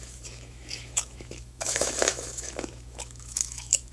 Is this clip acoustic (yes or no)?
no